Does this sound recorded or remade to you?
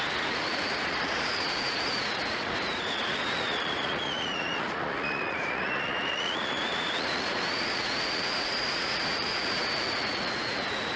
remade